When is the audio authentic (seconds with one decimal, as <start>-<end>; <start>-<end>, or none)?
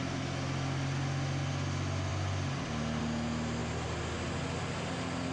0.0-5.3